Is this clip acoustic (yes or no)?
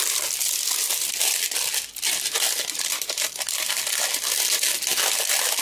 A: yes